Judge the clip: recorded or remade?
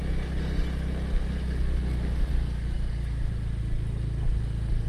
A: recorded